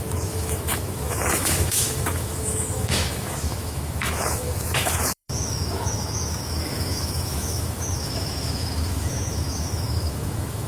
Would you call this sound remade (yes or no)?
yes